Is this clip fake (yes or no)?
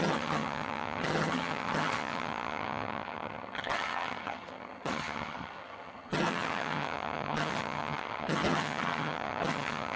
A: yes